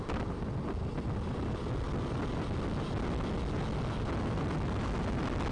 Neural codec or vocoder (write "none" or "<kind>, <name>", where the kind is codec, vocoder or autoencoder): none